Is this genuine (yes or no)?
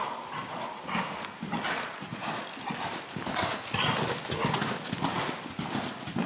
yes